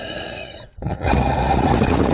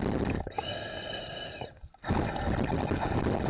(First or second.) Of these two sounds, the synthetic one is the first